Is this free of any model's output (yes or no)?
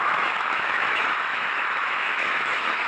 no